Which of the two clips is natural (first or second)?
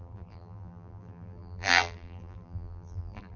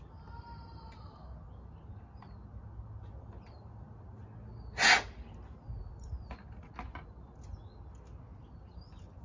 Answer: second